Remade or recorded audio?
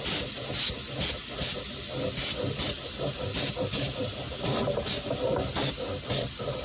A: recorded